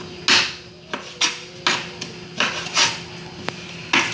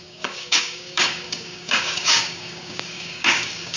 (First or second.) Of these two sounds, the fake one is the second